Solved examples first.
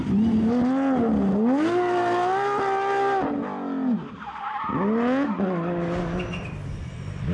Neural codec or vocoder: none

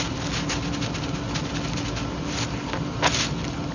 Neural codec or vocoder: none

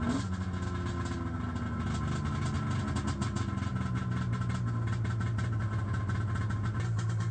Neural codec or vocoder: none